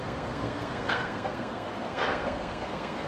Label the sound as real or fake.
fake